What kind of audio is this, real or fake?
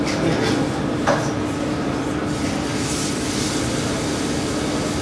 real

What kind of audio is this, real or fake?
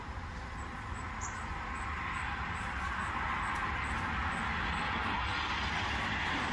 real